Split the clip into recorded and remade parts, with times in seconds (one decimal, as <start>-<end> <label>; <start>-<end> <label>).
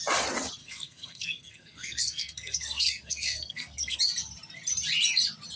0.0-0.6 recorded; 0.6-4.0 remade; 4.0-5.6 recorded